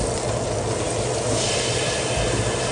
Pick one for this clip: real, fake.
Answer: real